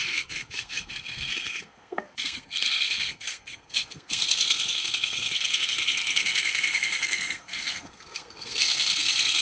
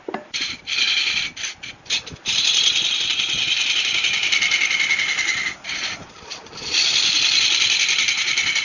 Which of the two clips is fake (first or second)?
first